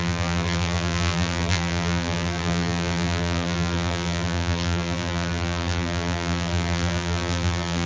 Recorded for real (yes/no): no